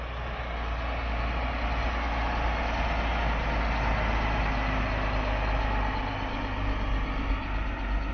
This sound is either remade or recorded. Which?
recorded